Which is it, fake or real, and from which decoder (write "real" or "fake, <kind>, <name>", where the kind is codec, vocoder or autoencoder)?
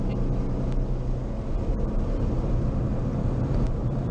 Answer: real